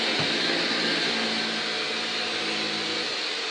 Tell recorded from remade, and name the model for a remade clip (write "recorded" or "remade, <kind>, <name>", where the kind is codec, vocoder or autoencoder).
recorded